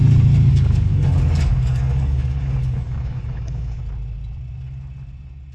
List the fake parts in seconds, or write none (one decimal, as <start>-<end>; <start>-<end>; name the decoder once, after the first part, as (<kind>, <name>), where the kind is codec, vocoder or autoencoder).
0.5-3.8 (codec, DAC)